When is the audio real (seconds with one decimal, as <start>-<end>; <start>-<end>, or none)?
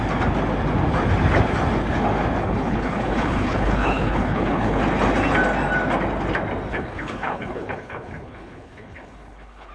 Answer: 0.0-2.4; 4.8-6.7